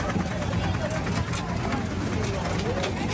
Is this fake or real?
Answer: real